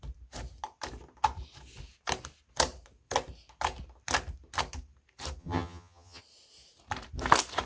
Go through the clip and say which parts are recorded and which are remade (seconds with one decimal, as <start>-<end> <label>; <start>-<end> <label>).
0.0-5.4 recorded; 5.4-6.2 remade; 6.2-7.7 recorded